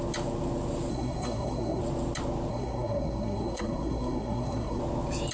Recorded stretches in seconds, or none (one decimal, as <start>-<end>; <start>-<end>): 0.0-0.9; 1.8-2.5; 4.8-5.3